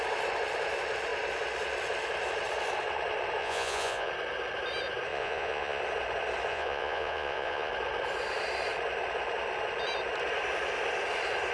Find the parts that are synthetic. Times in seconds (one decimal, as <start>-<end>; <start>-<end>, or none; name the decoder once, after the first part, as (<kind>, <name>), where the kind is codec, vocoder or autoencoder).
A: 3.4-4.1 (vocoder, Vocos); 5.1-5.8; 6.5-7.7